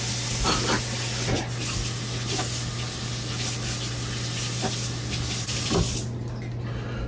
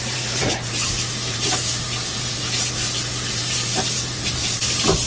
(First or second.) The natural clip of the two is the first